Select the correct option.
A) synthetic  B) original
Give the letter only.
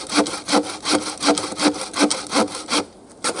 B